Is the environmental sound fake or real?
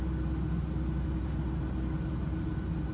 real